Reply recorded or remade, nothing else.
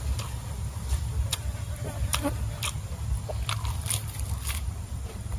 recorded